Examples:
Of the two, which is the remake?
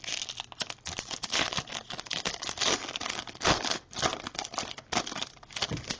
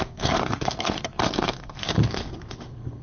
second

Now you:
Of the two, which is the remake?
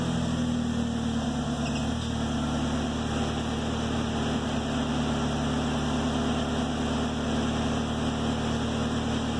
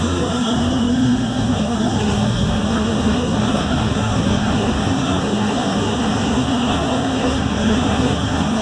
second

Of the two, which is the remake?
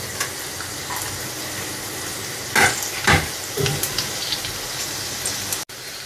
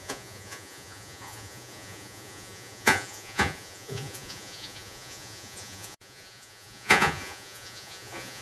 second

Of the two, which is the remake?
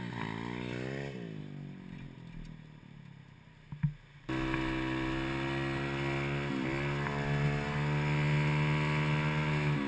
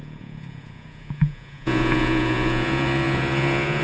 second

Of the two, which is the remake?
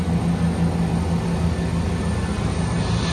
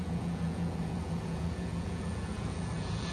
second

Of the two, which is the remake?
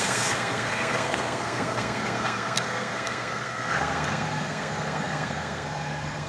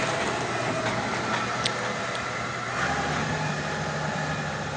first